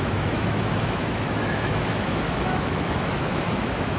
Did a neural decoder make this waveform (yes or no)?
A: yes